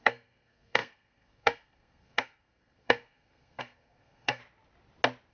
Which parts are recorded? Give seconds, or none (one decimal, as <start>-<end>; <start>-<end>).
4.4-5.3